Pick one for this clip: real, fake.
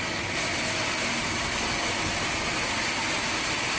real